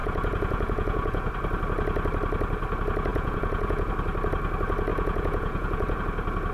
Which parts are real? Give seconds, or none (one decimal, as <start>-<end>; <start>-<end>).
1.3-3.1; 3.9-4.9; 6.0-6.5